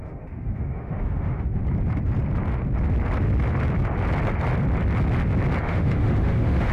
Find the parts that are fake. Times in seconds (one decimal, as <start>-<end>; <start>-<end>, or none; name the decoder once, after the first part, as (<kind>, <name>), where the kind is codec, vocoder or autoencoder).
0.0-1.6 (autoencoder, DAC-VAE); 5.6-6.7